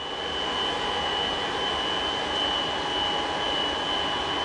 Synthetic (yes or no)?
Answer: no